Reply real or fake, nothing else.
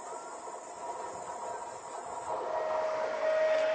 real